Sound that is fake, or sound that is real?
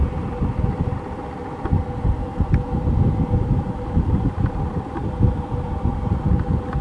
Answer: real